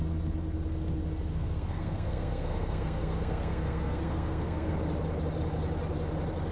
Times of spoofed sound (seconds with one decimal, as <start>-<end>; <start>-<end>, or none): 1.3-4.7